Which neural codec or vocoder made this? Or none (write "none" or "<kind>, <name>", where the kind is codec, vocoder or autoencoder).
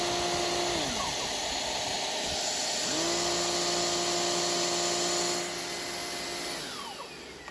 none